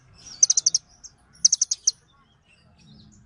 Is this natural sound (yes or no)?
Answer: yes